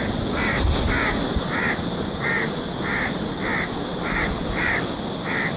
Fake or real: real